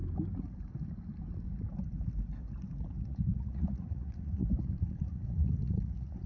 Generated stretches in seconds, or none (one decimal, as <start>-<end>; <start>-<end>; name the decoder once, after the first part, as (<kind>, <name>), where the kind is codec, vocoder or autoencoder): 3.0-6.3 (vocoder, Vocos)